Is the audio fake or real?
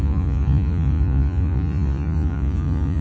fake